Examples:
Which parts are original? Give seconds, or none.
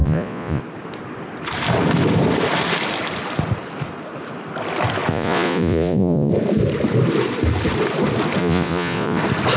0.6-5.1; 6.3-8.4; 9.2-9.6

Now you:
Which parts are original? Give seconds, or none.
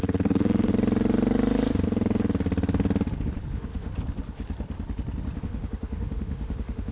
0.7-3.5; 3.9-5.4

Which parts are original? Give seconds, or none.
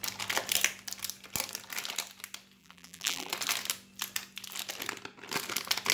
0.0-2.6; 3.3-5.9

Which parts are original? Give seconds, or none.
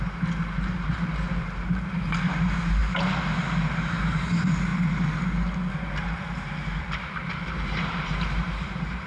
2.8-3.7; 4.7-5.7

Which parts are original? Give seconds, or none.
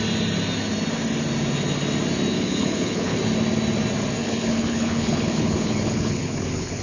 0.0-2.3; 3.2-4.2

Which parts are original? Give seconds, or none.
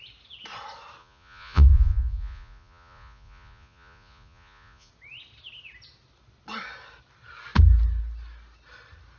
0.0-1.0; 4.9-9.2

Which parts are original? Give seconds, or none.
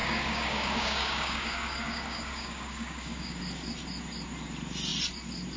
3.4-5.6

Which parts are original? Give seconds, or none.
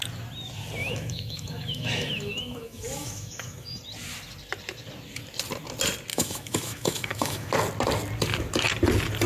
0.0-0.8; 3.8-6.1; 7.5-9.3